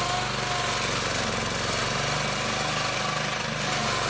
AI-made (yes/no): no